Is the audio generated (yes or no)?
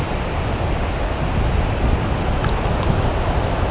no